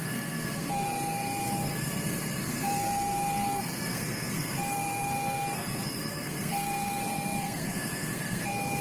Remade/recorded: remade